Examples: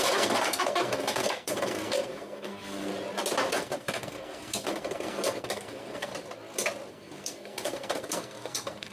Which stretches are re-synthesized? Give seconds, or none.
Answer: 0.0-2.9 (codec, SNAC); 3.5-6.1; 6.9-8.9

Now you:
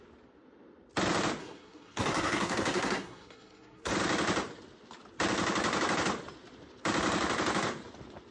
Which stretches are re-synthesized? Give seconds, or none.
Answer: 1.4-3.9 (codec, SNAC)

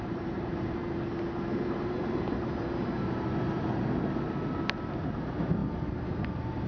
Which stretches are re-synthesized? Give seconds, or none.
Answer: 0.0-0.8 (vocoder, BigVGAN v2); 4.5-5.6; 6.3-6.7

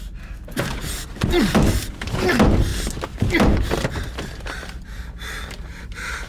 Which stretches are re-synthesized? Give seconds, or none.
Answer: none

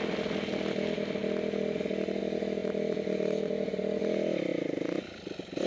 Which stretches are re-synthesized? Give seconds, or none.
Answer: none

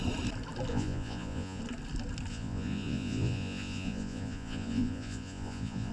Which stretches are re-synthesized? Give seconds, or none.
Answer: 0.7-1.6 (vocoder, Vocos); 2.3-5.9

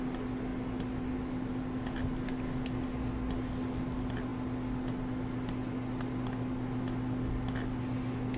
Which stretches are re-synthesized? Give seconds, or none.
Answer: none